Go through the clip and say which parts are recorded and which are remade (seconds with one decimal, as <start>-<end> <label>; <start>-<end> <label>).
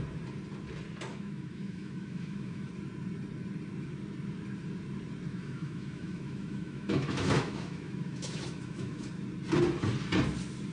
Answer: 0.0-1.1 recorded; 1.1-2.7 remade; 2.7-5.3 recorded; 5.3-9.1 remade; 9.1-10.7 recorded